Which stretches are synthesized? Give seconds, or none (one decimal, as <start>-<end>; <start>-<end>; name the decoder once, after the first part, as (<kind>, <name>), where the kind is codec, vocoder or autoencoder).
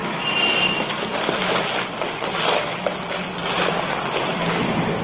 1.4-2.7 (vocoder, BigVGAN v2); 3.7-5.0